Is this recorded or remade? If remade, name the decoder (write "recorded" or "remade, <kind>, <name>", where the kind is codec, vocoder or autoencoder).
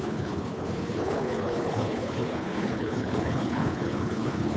remade, codec, HILCodec